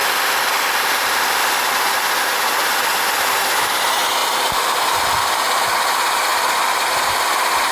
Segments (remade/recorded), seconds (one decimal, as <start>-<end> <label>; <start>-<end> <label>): 0.0-1.7 remade; 1.7-7.7 recorded